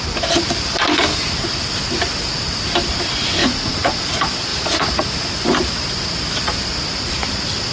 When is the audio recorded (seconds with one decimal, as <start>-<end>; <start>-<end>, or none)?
0.0-3.4; 4.0-4.5; 5.0-7.7